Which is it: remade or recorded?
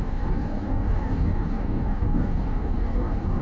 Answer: remade